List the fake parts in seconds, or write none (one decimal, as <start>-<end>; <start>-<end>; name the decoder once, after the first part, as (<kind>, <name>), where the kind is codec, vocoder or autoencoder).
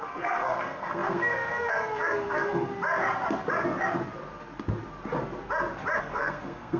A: 0.0-2.7 (codec, SNAC); 6.0-6.8